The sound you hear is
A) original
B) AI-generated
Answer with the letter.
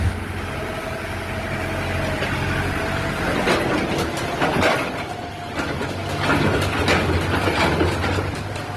A